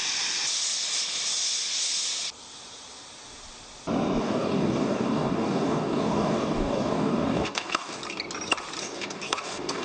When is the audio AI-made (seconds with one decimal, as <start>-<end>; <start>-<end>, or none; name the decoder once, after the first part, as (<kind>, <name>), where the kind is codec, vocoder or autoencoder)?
4.2-8.0 (codec, DAC); 8.8-9.8